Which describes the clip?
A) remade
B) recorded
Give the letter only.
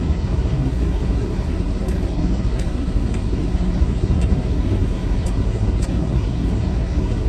A